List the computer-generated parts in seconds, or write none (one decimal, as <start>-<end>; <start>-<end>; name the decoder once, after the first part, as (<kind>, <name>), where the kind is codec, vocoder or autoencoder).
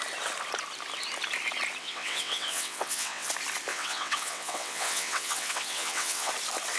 1.8-3.3 (vocoder, WaveNeXt); 3.7-6.3